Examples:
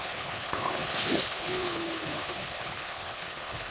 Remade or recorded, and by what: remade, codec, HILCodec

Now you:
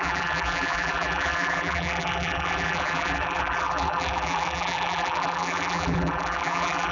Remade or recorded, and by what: remade, vocoder, BigVGAN v2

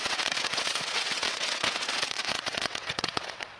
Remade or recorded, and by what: remade, vocoder, WaveNeXt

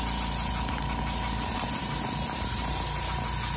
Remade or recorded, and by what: recorded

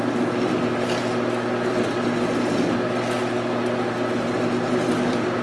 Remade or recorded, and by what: recorded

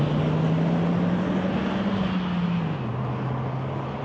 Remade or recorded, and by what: recorded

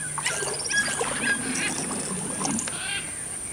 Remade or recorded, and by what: recorded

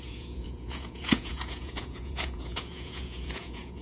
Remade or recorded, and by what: remade, vocoder, Vocos